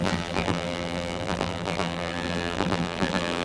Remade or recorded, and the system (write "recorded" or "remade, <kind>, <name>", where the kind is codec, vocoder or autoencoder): remade, vocoder, BigVGAN v2